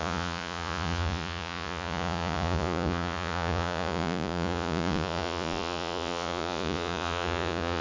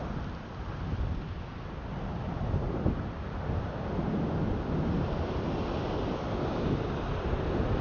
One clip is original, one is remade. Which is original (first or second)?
second